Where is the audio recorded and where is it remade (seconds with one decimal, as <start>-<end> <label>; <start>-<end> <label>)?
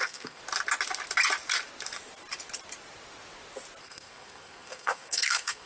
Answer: 0.0-0.4 remade; 0.4-3.8 recorded; 3.8-5.7 remade